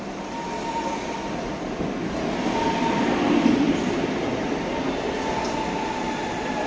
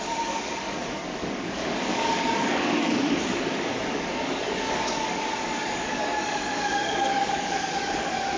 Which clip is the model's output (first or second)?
second